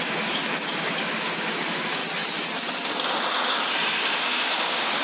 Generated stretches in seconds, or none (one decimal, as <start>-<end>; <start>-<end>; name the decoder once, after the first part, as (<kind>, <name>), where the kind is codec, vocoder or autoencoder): 0.0-2.0 (codec, DAC); 4.1-5.0